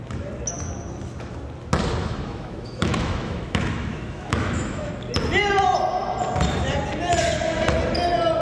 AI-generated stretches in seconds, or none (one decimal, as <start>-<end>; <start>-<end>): 2.0-4.9